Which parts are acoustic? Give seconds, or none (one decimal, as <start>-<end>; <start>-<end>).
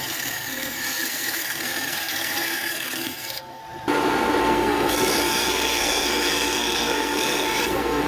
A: 3.6-4.4